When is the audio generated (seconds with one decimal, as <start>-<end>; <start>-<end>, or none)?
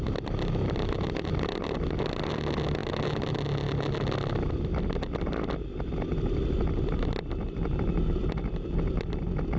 none